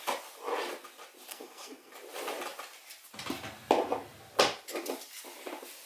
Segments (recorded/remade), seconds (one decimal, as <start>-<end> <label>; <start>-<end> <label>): 0.0-1.3 recorded; 1.3-1.9 remade; 1.9-5.8 recorded